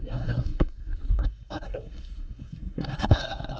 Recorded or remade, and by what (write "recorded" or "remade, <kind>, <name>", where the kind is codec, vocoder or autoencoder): remade, codec, SNAC